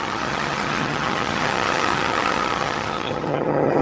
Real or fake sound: fake